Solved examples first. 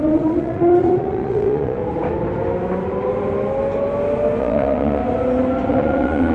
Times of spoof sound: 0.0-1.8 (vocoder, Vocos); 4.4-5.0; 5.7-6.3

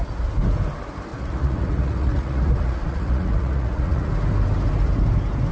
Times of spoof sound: 1.1-4.1 (vocoder, Vocos)

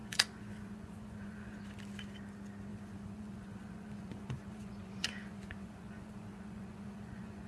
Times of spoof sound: 0.0-1.6 (vocoder, Vocos); 2.7-7.5

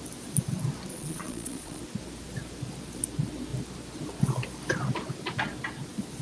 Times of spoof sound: 0.9-1.8 (vocoder, Vocos)

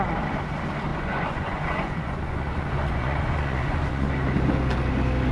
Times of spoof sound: 0.9-4.1 (vocoder, Vocos)

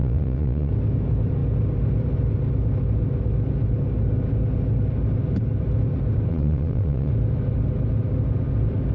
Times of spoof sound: 0.0-0.7 (vocoder, Vocos); 6.3-7.1